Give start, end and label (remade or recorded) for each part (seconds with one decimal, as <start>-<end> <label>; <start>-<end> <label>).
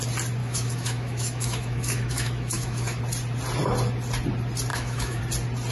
0.0-0.4 recorded; 0.4-3.0 remade; 3.0-4.7 recorded; 4.7-5.2 remade; 5.2-5.7 recorded